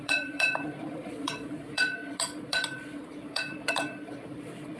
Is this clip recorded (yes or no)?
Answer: no